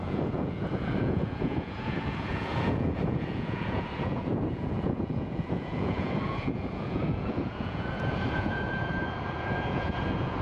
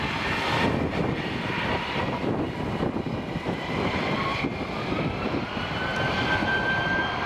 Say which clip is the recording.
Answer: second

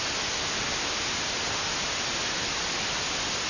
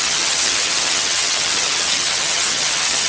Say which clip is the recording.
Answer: first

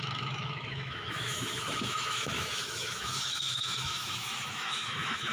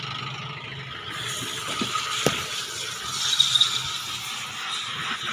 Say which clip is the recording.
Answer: second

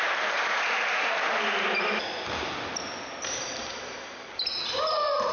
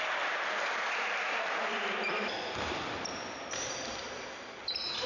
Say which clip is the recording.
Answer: first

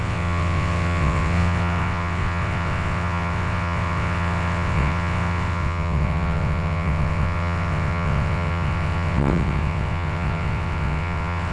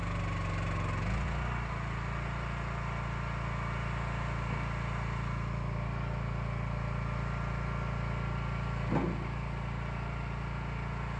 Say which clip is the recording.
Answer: second